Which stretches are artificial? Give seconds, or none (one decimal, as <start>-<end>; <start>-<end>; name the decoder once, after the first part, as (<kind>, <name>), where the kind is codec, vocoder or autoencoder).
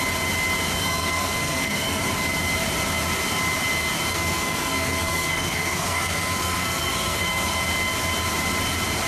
0.7-2.0 (codec, SNAC); 4.1-7.6